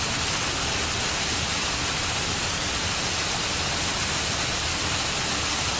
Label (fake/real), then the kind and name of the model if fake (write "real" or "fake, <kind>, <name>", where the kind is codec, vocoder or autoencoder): real